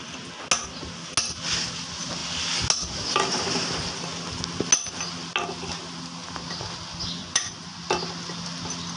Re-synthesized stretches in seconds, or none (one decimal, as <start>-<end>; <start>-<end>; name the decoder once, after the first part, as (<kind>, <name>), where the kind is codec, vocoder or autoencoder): 7.2-7.8 (vocoder, Vocos)